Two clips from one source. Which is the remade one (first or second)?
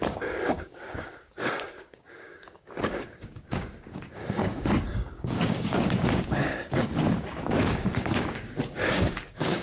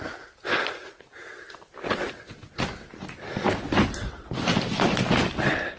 first